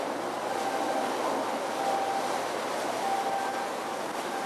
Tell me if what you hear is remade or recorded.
recorded